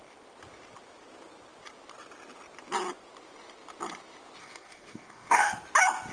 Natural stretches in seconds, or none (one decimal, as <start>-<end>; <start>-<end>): 0.0-4.4; 5.5-6.1